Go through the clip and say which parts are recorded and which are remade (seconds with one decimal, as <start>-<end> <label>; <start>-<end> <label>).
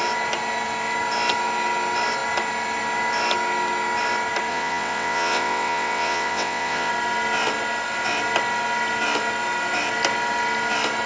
0.0-4.5 recorded; 4.5-6.9 remade; 6.9-11.1 recorded